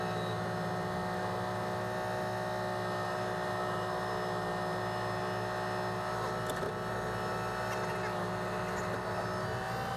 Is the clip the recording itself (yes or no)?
yes